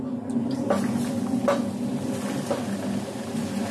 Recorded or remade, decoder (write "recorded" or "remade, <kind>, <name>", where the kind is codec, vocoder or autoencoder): recorded